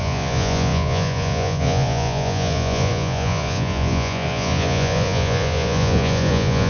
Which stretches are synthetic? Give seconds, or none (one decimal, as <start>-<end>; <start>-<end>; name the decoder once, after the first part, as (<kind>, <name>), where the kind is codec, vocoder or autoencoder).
0.0-6.7 (vocoder, Vocos)